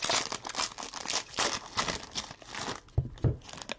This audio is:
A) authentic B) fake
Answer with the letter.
A